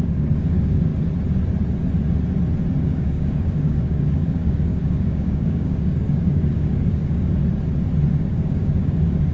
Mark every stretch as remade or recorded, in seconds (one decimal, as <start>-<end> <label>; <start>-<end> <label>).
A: 0.0-0.9 remade; 0.9-2.8 recorded; 2.8-7.4 remade; 7.4-8.2 recorded; 8.2-9.3 remade